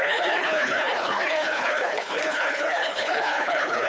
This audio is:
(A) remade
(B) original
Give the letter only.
A